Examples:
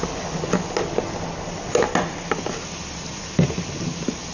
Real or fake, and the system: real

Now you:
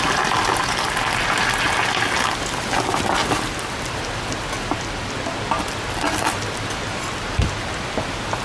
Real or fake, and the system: real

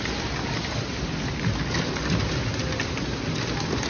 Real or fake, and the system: real